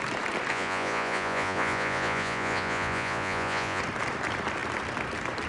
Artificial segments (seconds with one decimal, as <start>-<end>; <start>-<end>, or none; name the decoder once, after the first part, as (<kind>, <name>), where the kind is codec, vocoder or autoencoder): 0.5-3.8 (vocoder, Vocos)